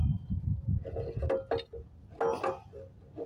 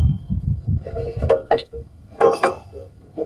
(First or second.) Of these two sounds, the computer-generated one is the second